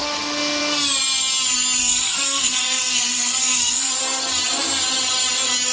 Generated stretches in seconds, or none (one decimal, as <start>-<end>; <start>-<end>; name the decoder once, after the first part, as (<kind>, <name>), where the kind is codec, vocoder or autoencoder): 1.8-3.9 (codec, SNAC)

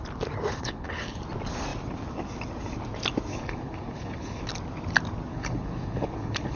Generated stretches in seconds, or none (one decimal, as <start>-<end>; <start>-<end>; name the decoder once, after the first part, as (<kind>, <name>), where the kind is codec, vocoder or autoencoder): 0.5-1.2 (codec, HILCodec); 3.3-4.4; 5.3-6.6

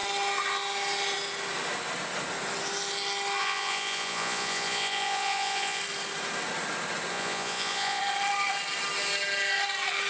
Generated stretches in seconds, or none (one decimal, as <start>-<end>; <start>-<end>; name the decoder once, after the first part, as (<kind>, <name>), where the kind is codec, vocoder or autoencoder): 3.4-5.8 (vocoder, Vocos); 7.1-8.0

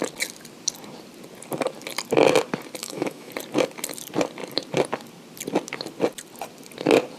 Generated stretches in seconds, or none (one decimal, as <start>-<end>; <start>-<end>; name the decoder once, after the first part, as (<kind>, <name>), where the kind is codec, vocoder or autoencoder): 2.8-3.3 (autoencoder, DAC-VAE)

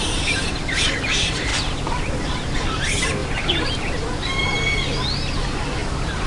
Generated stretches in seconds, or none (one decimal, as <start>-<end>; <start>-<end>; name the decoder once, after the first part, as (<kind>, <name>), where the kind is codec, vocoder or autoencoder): none

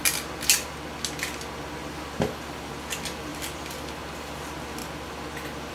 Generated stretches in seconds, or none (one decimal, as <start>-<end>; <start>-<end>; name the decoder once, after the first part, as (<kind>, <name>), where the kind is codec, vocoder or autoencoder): 3.3-3.9 (vocoder, BigVGAN v2)

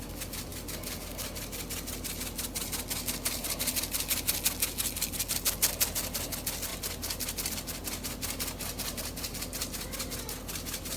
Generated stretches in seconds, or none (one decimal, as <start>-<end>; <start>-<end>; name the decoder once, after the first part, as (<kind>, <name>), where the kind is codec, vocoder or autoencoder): none